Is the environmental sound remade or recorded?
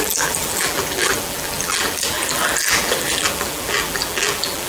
remade